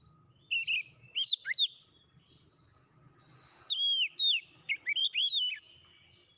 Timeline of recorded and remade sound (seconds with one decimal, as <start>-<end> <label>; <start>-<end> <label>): 0.0-6.4 recorded